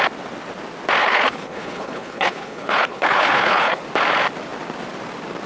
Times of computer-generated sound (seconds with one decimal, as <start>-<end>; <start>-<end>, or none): 1.0-3.8

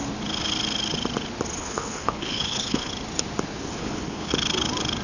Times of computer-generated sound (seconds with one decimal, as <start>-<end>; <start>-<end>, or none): 1.6-2.9; 3.7-4.3

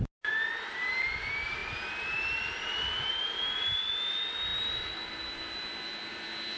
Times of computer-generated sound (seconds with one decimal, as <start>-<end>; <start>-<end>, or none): none

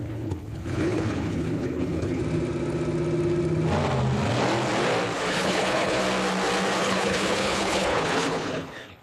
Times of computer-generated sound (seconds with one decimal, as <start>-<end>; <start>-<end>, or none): 0.0-2.2; 5.3-6.0; 6.8-9.0